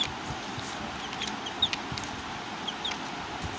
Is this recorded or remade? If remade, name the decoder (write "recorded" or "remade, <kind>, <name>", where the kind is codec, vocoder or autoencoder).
remade, vocoder, BigVGAN v2